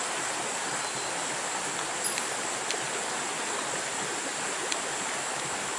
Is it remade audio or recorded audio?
recorded